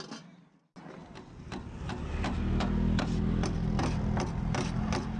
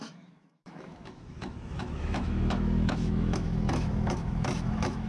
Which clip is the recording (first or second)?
first